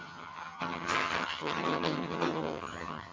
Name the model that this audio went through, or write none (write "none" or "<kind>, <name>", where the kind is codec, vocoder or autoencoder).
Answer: vocoder, HiFi-GAN